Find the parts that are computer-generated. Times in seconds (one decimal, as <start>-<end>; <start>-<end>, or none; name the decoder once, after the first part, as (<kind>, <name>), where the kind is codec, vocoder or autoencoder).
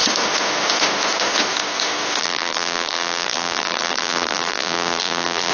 2.2-5.5 (vocoder, BigVGAN v2)